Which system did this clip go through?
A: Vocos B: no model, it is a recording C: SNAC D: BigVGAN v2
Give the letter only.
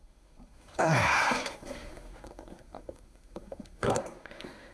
C